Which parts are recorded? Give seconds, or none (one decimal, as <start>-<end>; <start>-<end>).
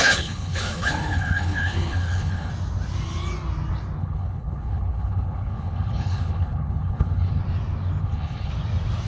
2.5-4.0; 7.4-8.0; 8.5-9.1